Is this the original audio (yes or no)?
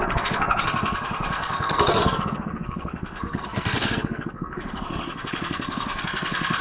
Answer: no